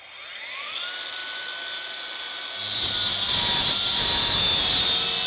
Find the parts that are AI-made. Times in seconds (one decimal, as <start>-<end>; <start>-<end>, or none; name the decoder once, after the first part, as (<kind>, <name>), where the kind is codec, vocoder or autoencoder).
none

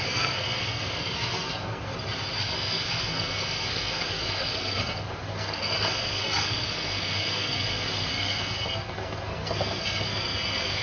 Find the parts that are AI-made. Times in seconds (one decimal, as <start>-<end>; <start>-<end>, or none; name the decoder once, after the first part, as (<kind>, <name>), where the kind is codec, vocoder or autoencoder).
0.0-1.9 (codec, SNAC); 2.4-10.8